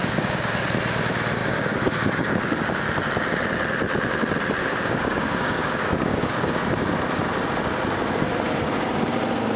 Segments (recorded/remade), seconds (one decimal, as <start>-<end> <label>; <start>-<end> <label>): 0.0-0.5 remade; 0.5-1.4 recorded; 1.4-2.8 remade; 2.8-4.6 recorded; 4.6-6.6 remade; 6.6-9.6 recorded